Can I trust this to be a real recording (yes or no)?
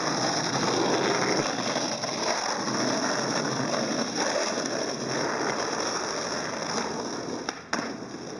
yes